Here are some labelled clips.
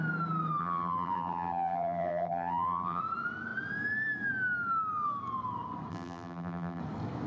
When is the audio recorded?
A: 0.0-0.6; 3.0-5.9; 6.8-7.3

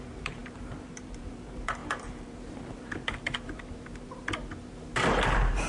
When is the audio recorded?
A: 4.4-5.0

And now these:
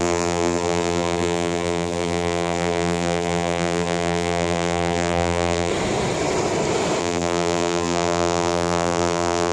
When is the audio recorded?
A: 5.7-7.0

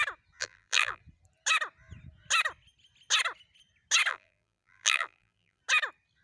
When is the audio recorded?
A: 0.0-0.4; 1.0-4.1; 5.6-6.2

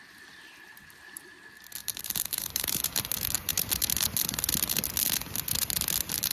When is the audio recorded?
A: 0.0-1.8; 2.8-6.3

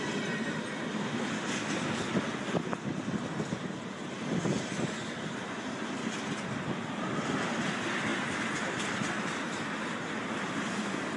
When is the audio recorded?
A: 0.0-11.2